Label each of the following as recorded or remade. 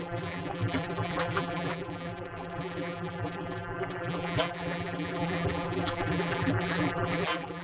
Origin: remade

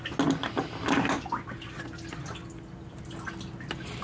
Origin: recorded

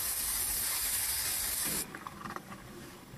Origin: remade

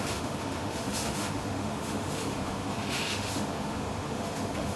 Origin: remade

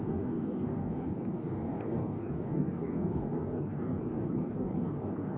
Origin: remade